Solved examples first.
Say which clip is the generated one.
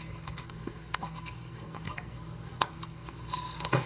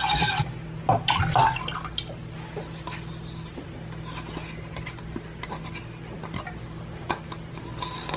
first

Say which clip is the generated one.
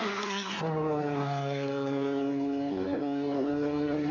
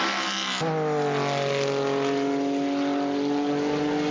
first